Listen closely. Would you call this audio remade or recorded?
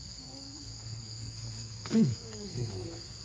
remade